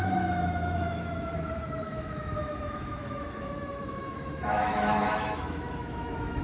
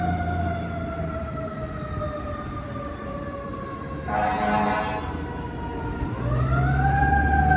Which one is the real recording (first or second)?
second